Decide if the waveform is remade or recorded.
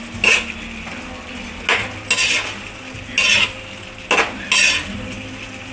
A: recorded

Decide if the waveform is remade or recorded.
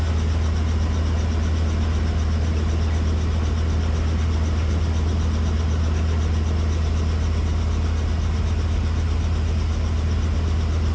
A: recorded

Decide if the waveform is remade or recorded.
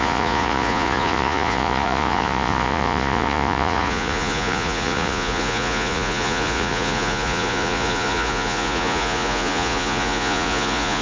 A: remade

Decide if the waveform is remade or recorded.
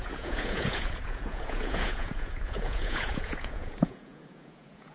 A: remade